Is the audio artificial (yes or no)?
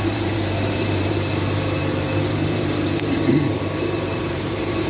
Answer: yes